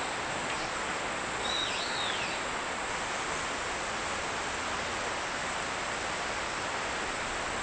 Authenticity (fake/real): real